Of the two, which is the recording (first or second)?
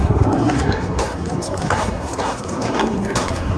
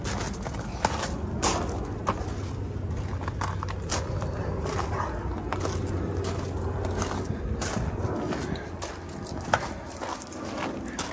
second